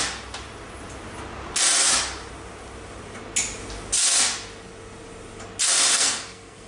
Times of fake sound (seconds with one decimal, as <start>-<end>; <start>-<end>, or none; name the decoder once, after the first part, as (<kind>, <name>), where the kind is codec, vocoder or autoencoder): 5.9-6.7 (codec, SNAC)